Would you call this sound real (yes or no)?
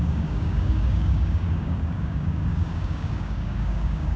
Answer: no